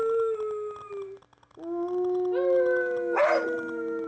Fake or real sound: real